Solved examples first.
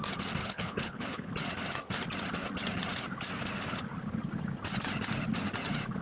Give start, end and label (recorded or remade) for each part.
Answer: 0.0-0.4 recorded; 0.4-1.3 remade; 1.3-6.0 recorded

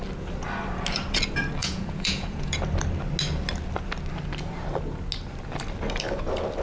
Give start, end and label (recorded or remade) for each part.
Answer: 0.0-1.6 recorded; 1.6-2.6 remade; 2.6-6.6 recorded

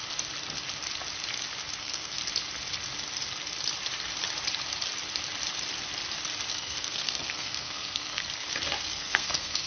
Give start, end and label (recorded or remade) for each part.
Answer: 0.0-1.8 recorded; 1.8-2.2 remade; 2.2-6.5 recorded; 6.5-8.2 remade; 8.2-8.9 recorded; 8.9-9.7 remade

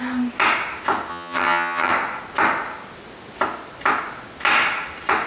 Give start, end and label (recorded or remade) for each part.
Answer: 0.0-1.1 recorded; 1.1-1.9 remade; 1.9-5.3 recorded

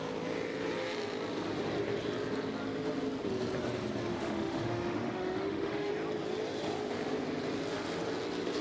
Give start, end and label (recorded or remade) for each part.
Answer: 0.0-4.1 recorded; 4.1-5.9 remade; 5.9-8.6 recorded

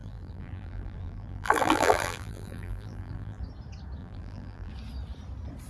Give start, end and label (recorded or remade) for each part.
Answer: 0.0-3.4 remade; 3.4-4.0 recorded; 4.0-4.7 remade; 4.7-5.7 recorded